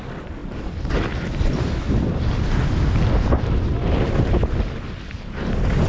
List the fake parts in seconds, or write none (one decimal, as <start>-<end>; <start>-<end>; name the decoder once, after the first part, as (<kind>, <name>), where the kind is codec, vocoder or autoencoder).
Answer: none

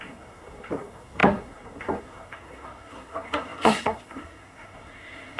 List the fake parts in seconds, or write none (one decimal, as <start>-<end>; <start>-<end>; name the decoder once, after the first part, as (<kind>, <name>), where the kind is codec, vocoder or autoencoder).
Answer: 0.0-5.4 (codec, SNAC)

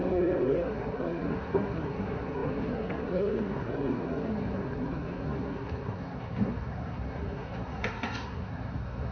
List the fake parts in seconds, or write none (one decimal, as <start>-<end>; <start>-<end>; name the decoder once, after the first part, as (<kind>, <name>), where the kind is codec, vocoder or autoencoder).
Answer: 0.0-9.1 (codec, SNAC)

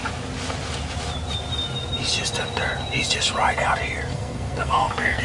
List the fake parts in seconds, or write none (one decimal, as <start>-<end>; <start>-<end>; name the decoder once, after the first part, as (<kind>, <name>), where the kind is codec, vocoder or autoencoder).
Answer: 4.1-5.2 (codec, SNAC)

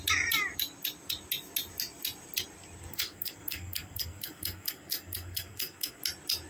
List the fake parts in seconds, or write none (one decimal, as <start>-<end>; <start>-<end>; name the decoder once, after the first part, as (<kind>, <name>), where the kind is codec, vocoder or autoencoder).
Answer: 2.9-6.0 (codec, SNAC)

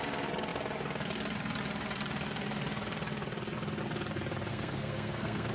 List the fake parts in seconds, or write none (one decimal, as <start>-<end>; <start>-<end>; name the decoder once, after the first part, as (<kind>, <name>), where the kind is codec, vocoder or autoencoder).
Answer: 4.5-5.5 (codec, SNAC)